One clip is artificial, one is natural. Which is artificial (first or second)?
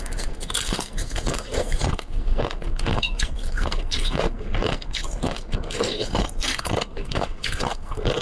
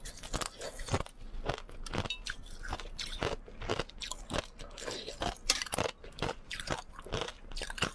first